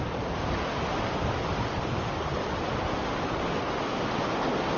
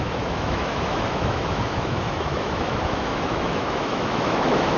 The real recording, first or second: first